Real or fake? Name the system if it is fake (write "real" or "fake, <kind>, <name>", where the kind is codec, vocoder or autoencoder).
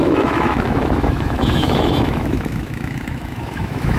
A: fake, autoencoder, DAC-VAE